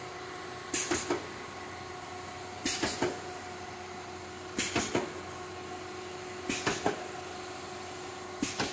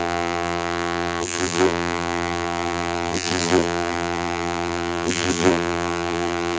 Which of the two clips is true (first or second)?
first